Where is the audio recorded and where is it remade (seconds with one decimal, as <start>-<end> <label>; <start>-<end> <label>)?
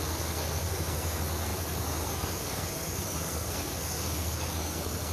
0.0-5.1 remade